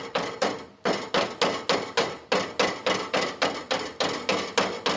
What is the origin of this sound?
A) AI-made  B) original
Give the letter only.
B